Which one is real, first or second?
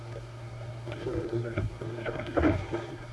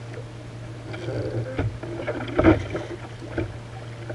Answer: second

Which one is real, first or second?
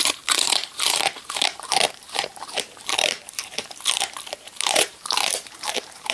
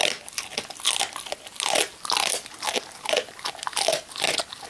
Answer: second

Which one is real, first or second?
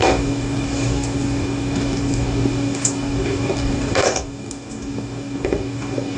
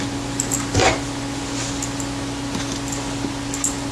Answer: second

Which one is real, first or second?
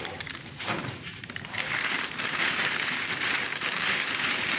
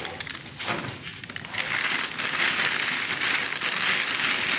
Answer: second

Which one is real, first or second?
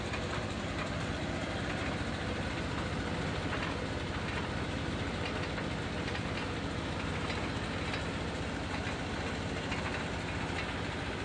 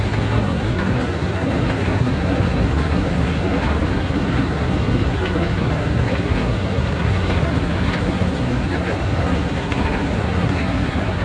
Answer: first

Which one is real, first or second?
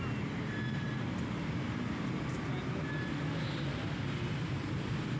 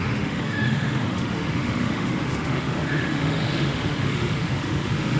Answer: first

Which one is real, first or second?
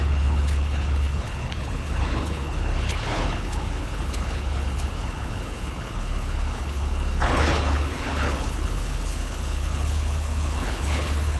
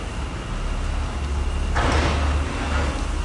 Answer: second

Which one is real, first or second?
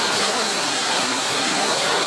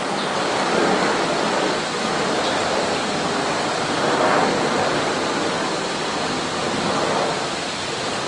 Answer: second